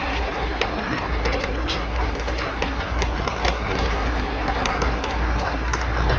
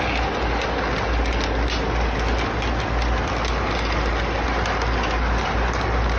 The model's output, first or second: first